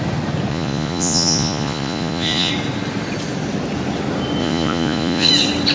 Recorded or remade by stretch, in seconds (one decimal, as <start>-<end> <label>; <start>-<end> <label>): 0.0-0.5 recorded; 0.5-2.5 remade; 2.5-4.4 recorded; 4.4-5.3 remade; 5.3-5.7 recorded